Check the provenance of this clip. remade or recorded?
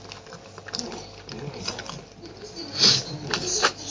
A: recorded